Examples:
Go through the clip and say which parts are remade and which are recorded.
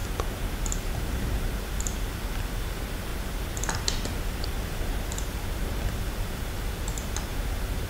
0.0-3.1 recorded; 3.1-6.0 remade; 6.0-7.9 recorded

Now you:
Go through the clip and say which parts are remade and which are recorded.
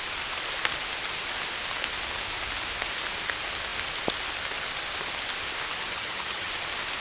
0.0-5.9 recorded; 5.9-6.5 remade; 6.5-7.0 recorded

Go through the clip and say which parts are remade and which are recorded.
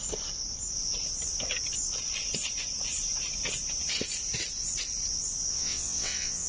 0.0-5.5 recorded; 5.5-6.5 remade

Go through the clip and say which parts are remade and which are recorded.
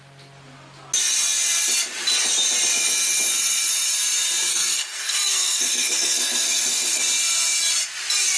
0.0-4.5 recorded; 4.5-7.0 remade; 7.0-8.4 recorded